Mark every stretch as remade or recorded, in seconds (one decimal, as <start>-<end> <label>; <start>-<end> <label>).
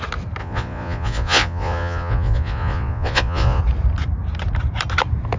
0.0-0.4 recorded; 0.4-3.6 remade; 3.6-5.4 recorded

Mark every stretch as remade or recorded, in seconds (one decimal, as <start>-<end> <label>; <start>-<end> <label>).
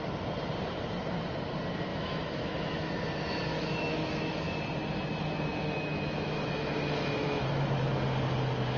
0.0-1.9 recorded; 1.9-2.9 remade; 2.9-3.5 recorded; 3.5-4.6 remade; 4.6-5.5 recorded; 5.5-7.8 remade; 7.8-8.8 recorded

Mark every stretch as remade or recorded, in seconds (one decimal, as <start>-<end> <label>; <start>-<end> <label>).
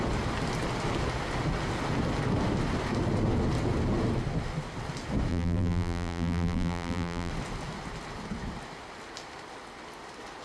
0.0-5.3 recorded; 5.3-7.3 remade; 7.3-10.4 recorded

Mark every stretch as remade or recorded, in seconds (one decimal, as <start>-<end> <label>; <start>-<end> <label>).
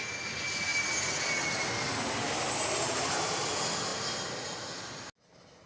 0.0-5.7 recorded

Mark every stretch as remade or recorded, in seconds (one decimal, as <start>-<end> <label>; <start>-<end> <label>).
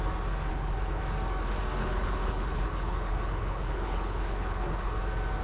0.0-0.5 recorded; 0.5-1.0 remade; 1.0-1.8 recorded; 1.8-5.0 remade; 5.0-5.4 recorded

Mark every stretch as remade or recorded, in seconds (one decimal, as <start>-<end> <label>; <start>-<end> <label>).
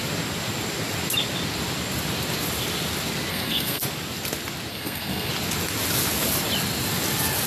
0.0-3.3 recorded; 3.3-3.8 remade; 3.8-4.7 recorded; 4.7-5.3 remade; 5.3-7.5 recorded